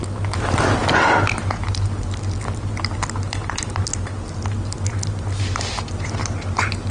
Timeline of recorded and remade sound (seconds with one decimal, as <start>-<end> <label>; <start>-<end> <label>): 0.0-6.9 recorded